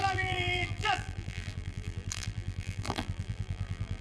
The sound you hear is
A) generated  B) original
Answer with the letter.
A